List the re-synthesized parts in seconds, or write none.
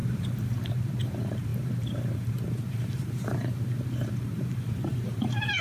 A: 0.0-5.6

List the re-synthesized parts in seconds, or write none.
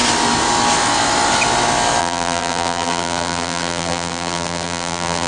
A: 2.0-5.3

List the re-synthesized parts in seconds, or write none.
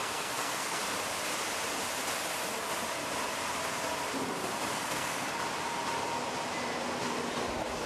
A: 0.0-0.8; 4.7-5.3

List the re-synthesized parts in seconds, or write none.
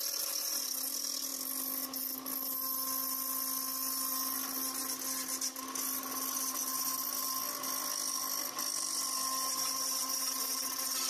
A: none